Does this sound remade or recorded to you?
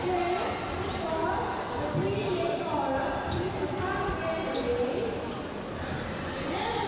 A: recorded